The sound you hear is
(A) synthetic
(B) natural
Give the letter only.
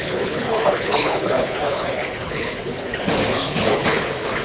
A